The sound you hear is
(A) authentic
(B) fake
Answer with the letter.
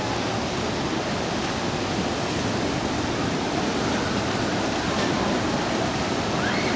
A